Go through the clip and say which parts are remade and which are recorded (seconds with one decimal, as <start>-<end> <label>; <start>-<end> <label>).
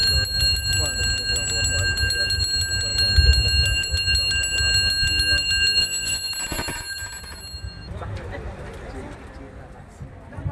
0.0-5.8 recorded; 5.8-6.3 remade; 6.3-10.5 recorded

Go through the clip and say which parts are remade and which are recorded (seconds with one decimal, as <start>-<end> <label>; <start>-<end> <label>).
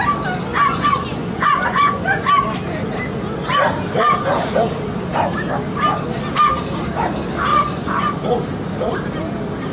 0.0-0.5 recorded; 0.5-2.2 remade; 2.2-7.5 recorded; 7.5-8.1 remade; 8.1-9.7 recorded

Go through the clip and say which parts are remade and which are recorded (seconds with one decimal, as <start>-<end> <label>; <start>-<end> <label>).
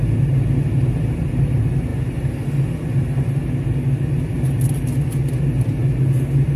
0.0-6.6 recorded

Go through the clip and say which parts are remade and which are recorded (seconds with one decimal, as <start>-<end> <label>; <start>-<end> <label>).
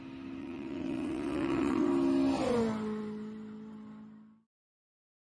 0.0-0.4 recorded; 0.4-1.9 remade; 1.9-5.3 recorded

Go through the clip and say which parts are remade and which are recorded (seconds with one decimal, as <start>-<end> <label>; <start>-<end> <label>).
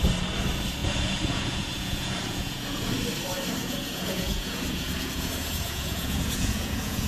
0.0-0.8 recorded; 0.8-2.9 remade; 2.9-3.6 recorded; 3.6-7.1 remade